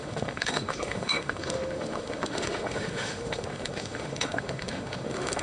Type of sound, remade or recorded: remade